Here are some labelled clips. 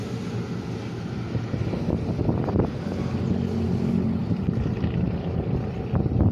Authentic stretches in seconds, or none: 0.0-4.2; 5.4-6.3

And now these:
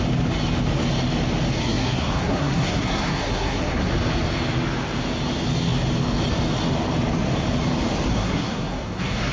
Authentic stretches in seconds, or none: 0.0-1.6; 3.9-8.1

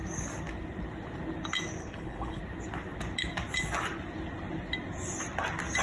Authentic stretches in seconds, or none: 0.0-1.8; 2.4-5.8

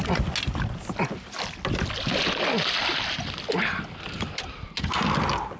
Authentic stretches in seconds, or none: 0.0-5.6

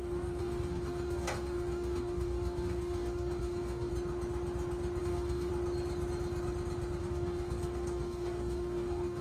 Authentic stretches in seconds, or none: 3.9-5.0; 5.5-7.0